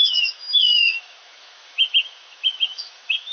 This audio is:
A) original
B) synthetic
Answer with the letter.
B